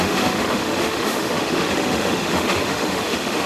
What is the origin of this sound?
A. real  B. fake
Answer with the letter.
B